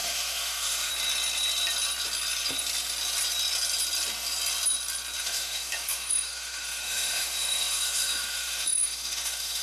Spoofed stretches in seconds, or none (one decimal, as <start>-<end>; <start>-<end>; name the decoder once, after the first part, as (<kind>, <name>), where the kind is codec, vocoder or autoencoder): 0.0-0.9 (autoencoder, DAC-VAE); 5.2-9.6